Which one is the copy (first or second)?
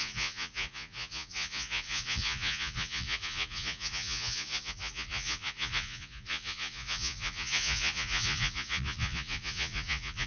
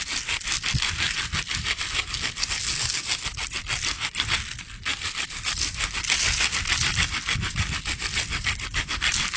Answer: first